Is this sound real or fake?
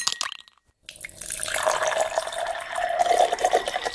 real